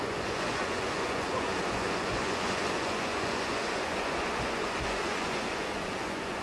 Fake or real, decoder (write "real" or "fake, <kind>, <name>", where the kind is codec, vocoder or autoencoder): fake, vocoder, Vocos